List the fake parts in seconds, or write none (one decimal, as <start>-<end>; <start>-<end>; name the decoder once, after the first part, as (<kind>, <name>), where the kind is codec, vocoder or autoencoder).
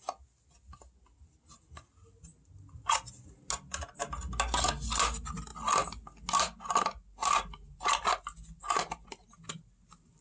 none